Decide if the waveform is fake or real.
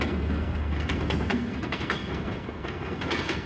fake